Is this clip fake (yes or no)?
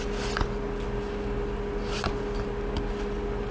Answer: no